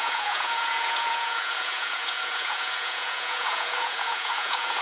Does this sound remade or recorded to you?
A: remade